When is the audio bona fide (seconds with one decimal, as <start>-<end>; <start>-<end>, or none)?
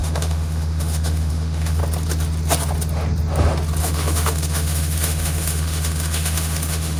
1.8-3.8